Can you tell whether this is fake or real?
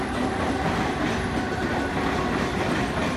real